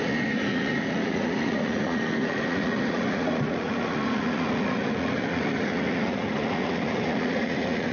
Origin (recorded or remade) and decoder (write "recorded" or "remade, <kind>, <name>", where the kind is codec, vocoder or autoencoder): remade, vocoder, Vocos